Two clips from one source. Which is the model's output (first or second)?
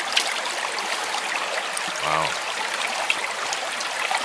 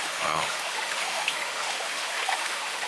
second